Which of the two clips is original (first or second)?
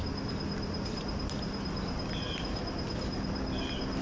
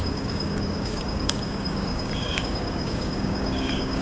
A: first